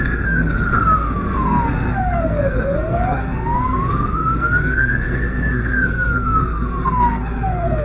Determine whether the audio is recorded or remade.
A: remade